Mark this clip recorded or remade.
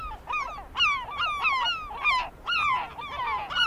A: recorded